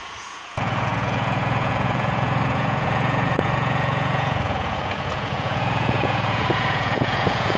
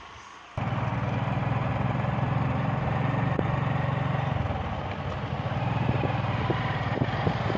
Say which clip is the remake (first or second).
first